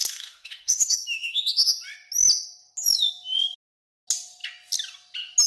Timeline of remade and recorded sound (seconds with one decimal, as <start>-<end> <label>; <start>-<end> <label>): 0.0-1.4 remade; 1.4-5.5 recorded